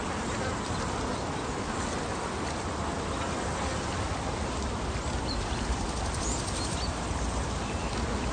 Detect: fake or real real